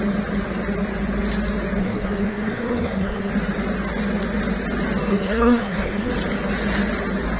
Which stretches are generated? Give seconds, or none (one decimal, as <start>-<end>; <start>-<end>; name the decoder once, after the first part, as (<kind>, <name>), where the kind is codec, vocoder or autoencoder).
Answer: 1.8-3.3 (codec, SNAC); 5.1-6.1